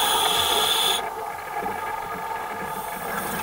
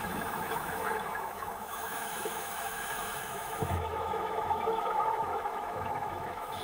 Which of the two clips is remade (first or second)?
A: second